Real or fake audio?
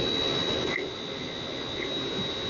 real